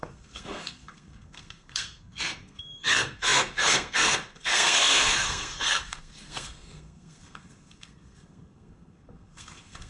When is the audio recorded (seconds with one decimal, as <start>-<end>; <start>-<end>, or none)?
none